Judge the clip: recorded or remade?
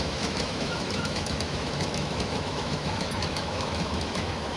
remade